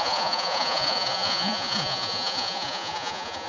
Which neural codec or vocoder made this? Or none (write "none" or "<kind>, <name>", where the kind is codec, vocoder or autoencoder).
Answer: vocoder, Vocos